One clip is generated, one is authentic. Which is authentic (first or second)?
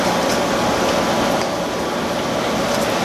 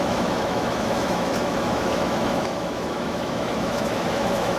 first